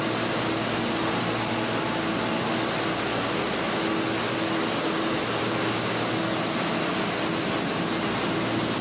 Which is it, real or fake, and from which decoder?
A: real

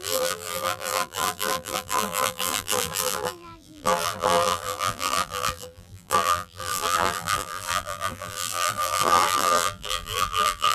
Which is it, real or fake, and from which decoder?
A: fake, vocoder, BigVGAN v2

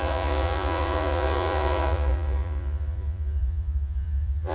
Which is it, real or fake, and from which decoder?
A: fake, vocoder, Vocos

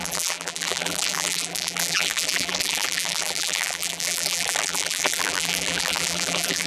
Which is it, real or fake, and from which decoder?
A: fake, vocoder, BigVGAN v2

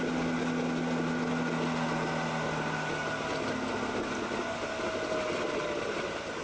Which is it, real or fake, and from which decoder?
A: real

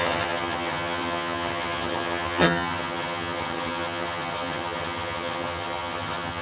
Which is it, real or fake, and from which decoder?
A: fake, vocoder, HiFi-GAN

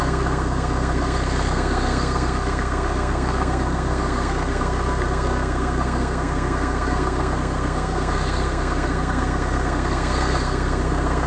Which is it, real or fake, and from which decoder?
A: fake, codec, SNAC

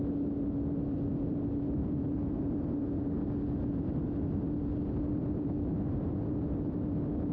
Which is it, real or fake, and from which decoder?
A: real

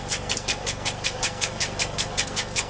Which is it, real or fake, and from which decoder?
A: fake, codec, SNAC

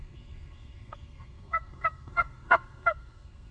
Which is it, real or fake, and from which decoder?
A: fake, codec, SNAC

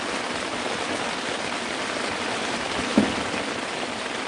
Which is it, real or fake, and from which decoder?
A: fake, vocoder, BigVGAN v2